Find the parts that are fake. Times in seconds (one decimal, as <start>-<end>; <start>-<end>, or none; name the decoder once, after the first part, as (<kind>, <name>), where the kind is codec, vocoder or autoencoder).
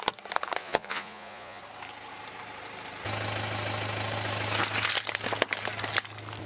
0.6-1.6 (vocoder, Vocos)